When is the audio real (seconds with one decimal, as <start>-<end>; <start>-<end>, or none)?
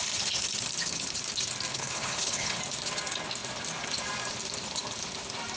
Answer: 0.0-1.7; 2.6-5.6